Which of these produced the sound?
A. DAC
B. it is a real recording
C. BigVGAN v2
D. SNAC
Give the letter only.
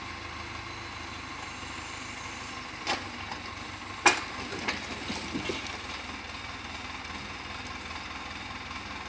B